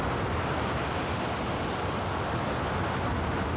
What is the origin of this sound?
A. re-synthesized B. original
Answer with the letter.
B